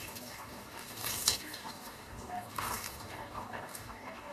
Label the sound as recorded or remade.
remade